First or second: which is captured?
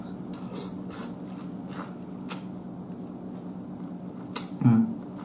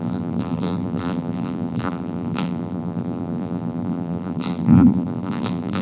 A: first